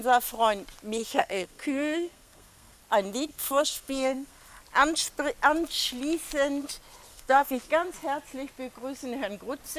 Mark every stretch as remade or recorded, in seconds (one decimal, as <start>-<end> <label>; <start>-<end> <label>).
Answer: 0.0-1.0 recorded; 1.0-2.8 remade; 2.8-3.3 recorded; 3.3-4.6 remade; 4.6-7.1 recorded; 7.1-7.7 remade; 7.7-9.8 recorded